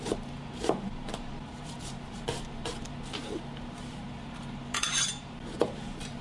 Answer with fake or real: fake